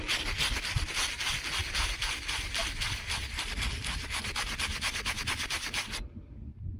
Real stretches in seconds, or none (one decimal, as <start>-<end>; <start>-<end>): 0.0-1.6; 5.2-6.8